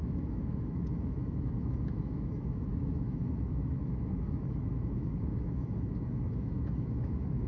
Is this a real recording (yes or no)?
no